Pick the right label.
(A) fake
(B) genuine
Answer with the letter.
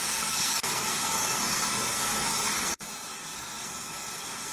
A